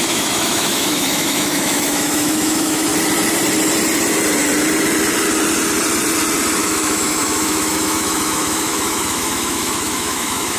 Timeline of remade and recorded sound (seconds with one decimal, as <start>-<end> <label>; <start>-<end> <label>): 0.0-2.9 remade; 2.9-6.6 recorded; 6.6-10.6 remade